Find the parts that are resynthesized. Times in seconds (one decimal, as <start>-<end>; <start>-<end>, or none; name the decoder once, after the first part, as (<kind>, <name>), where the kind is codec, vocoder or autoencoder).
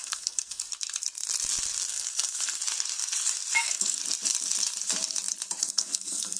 0.0-0.6 (codec, SNAC); 1.9-2.6; 3.6-4.0; 5.6-6.4